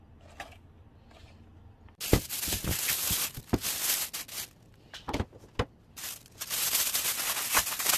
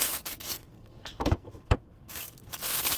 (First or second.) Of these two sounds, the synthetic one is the second